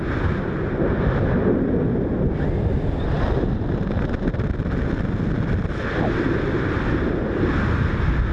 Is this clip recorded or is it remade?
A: recorded